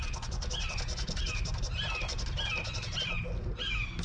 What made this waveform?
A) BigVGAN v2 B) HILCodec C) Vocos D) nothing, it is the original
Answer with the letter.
D